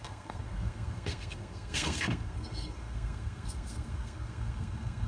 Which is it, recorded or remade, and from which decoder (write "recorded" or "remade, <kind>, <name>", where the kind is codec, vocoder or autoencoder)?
remade, codec, SNAC